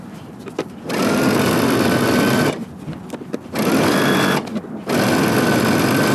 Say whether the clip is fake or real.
real